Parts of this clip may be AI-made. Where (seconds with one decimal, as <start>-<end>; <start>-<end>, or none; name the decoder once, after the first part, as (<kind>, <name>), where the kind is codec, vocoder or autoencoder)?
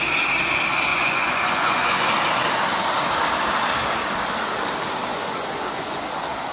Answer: 0.9-2.1 (vocoder, Vocos); 5.1-6.0